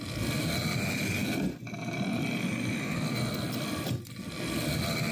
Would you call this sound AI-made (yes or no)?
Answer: no